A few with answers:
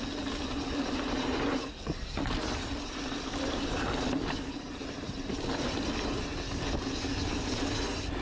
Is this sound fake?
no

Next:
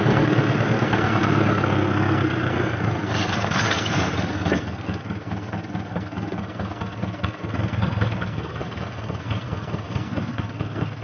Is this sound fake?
yes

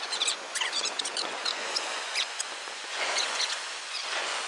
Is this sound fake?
yes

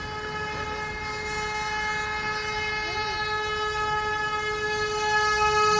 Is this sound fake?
no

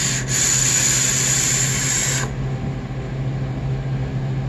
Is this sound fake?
no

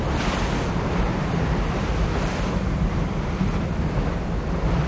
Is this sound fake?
no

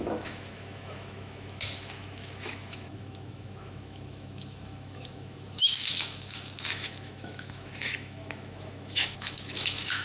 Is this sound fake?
yes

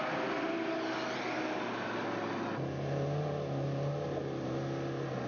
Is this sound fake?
no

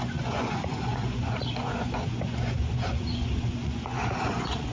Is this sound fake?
yes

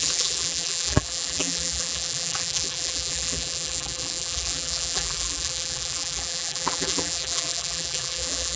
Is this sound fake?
yes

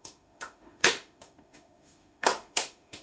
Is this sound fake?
yes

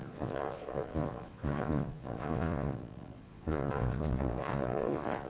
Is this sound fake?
yes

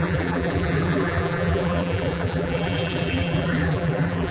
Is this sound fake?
yes